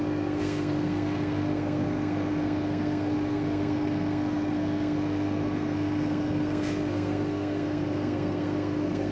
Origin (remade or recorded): remade